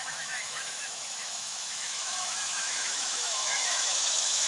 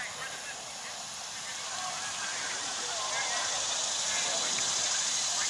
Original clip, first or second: second